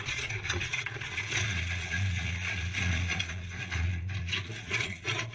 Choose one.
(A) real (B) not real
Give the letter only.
B